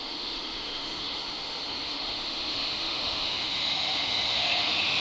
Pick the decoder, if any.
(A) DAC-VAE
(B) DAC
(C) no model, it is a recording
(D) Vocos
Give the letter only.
A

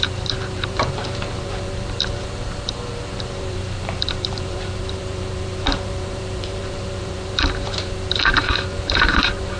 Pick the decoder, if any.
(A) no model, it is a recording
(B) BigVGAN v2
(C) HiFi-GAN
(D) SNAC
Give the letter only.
B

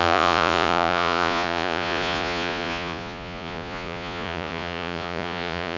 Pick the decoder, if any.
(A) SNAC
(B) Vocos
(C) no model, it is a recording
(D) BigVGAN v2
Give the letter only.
B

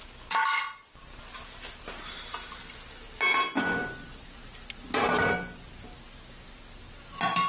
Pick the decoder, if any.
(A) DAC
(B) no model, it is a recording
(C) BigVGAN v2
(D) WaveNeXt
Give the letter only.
B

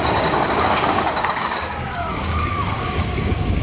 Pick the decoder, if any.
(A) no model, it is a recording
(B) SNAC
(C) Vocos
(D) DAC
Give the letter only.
D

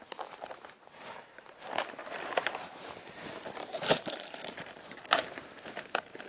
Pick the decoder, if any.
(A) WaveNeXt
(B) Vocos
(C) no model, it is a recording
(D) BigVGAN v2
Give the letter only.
D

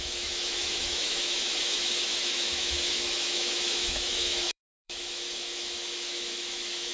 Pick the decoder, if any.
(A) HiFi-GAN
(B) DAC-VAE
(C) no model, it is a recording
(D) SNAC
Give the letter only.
B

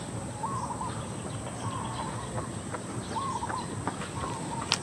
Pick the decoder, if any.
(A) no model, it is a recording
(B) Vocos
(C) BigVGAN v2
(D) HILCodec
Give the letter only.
A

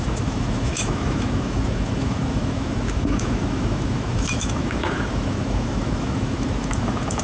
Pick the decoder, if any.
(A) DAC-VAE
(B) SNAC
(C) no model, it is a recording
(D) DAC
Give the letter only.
A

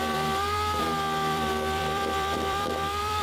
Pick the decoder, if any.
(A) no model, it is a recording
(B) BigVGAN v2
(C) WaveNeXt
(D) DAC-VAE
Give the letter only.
B